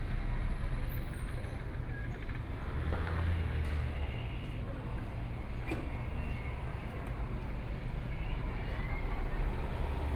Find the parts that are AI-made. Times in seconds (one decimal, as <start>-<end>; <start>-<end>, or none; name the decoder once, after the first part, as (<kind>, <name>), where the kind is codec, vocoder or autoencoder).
6.7-9.5 (vocoder, BigVGAN v2)